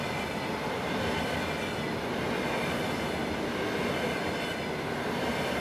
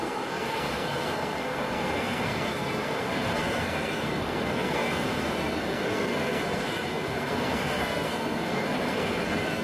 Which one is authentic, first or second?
first